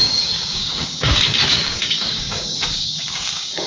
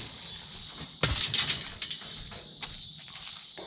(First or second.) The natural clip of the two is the second